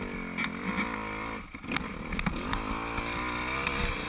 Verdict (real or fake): real